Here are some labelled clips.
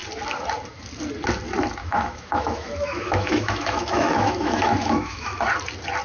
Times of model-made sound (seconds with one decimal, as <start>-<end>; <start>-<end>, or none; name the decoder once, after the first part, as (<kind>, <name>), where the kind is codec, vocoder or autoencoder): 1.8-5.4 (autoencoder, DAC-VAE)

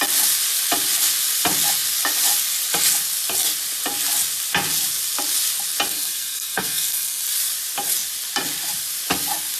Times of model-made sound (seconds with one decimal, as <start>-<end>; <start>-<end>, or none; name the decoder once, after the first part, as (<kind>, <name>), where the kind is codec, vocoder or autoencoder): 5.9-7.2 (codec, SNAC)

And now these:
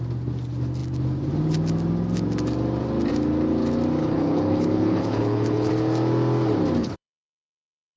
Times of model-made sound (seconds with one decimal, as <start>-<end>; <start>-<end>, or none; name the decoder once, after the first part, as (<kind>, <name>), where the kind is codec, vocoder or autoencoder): 4.0-5.7 (codec, HILCodec); 6.8-8.0

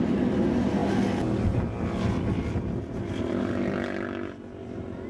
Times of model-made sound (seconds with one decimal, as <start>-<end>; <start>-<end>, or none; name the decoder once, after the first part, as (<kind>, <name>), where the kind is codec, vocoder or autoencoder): none